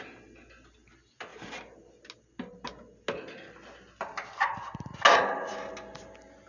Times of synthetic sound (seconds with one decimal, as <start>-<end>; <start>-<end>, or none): none